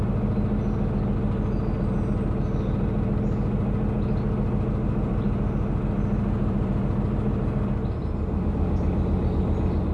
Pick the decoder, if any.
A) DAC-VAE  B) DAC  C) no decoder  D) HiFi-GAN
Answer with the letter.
C